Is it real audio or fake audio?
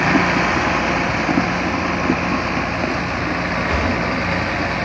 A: real